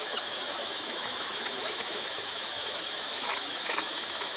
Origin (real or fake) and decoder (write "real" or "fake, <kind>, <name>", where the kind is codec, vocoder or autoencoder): fake, autoencoder, DAC-VAE